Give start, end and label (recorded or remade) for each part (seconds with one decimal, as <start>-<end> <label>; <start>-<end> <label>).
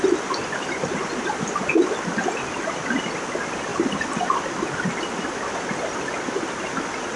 0.0-0.4 recorded; 0.4-1.6 remade; 1.6-7.2 recorded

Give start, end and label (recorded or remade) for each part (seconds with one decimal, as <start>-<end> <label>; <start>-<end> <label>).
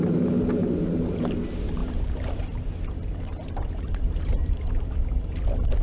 0.0-0.6 recorded; 0.6-1.4 remade; 1.4-1.8 recorded; 1.8-5.0 remade; 5.0-5.8 recorded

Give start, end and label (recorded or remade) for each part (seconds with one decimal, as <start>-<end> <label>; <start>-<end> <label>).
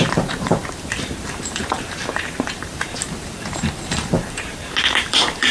0.0-5.5 remade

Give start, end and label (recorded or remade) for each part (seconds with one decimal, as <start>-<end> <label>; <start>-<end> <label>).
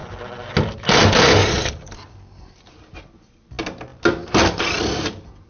0.0-1.4 recorded; 1.4-2.6 remade; 2.6-5.5 recorded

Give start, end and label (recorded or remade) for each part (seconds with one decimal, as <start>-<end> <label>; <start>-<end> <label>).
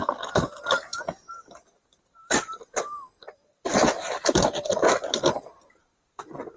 0.0-2.2 recorded; 2.2-4.4 remade; 4.4-6.6 recorded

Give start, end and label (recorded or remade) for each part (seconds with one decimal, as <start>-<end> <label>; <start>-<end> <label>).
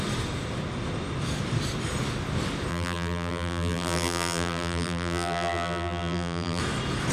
0.0-2.7 recorded; 2.7-6.6 remade; 6.6-7.1 recorded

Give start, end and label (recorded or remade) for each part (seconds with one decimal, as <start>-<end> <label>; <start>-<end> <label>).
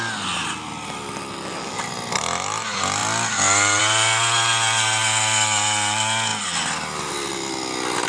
0.0-3.0 recorded; 3.0-3.8 remade; 3.8-8.1 recorded